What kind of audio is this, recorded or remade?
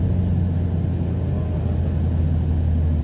recorded